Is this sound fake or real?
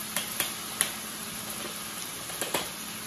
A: real